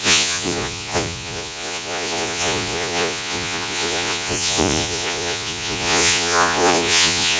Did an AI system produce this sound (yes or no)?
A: yes